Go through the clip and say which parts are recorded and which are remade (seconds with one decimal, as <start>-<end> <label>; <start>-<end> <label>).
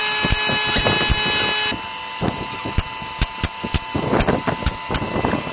0.0-5.5 recorded